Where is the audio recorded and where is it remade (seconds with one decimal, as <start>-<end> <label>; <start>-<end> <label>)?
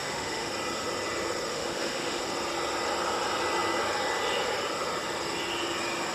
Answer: 0.0-0.5 remade; 0.5-1.5 recorded; 1.5-2.2 remade; 2.2-6.1 recorded